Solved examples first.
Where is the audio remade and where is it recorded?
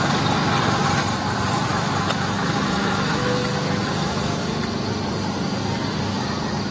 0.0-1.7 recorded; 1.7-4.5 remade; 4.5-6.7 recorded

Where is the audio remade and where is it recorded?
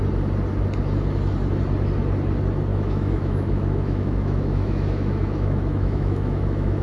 0.0-2.7 recorded; 2.7-6.8 remade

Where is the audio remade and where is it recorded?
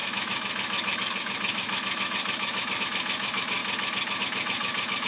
0.0-3.6 remade; 3.6-4.2 recorded; 4.2-5.1 remade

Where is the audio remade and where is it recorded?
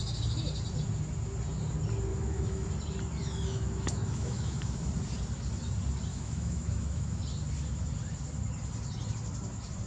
0.0-2.1 recorded; 2.1-2.7 remade; 2.7-3.2 recorded; 3.2-4.9 remade; 4.9-6.1 recorded; 6.1-7.2 remade; 7.2-9.9 recorded